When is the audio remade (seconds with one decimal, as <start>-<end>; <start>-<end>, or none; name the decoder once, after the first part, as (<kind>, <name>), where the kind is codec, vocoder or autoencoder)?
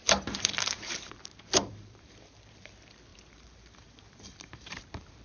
0.0-2.7 (vocoder, BigVGAN v2); 3.1-5.2